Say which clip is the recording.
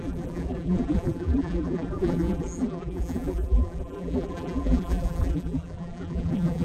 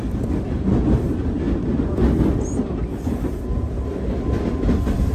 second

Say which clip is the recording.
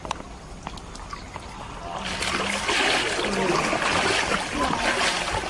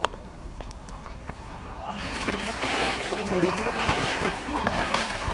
first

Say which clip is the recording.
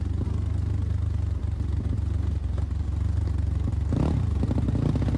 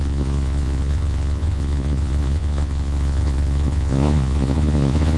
first